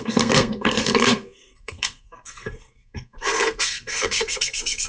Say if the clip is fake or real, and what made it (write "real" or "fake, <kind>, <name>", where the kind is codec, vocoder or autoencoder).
fake, codec, SNAC